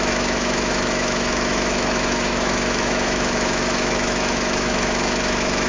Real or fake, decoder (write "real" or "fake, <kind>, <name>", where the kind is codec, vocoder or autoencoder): fake, autoencoder, DAC-VAE